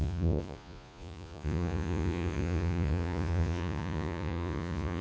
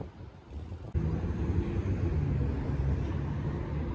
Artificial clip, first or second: first